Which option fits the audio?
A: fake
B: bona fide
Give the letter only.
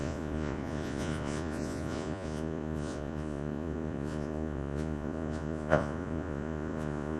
A